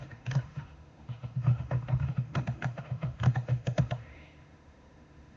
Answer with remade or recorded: remade